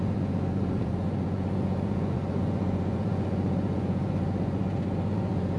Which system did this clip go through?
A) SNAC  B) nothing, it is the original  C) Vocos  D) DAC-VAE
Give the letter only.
C